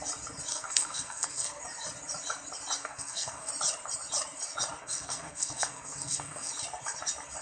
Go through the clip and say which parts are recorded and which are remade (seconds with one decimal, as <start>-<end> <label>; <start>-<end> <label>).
0.0-0.5 recorded; 0.5-1.6 remade; 1.6-2.8 recorded; 2.8-3.5 remade; 3.5-4.8 recorded; 4.8-6.5 remade; 6.5-7.4 recorded